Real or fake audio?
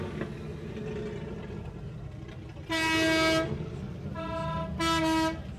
real